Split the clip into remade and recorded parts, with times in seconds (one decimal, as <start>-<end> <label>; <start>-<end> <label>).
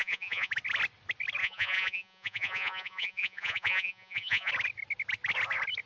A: 0.0-0.5 remade; 0.5-1.4 recorded; 1.4-4.5 remade; 4.5-5.9 recorded